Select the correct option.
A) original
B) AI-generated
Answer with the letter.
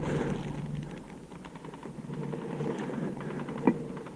A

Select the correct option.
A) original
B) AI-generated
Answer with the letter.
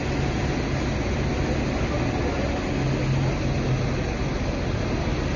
A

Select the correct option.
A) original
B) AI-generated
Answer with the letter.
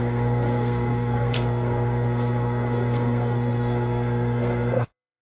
B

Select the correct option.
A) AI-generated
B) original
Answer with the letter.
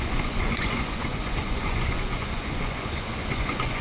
A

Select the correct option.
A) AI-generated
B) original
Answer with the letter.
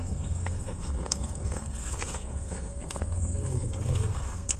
A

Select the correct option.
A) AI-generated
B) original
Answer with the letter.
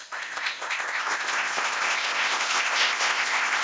A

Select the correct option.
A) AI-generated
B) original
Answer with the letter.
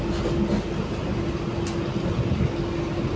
B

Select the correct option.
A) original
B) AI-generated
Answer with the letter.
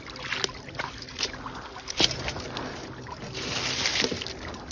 A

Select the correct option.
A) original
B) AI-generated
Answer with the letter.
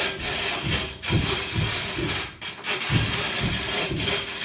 A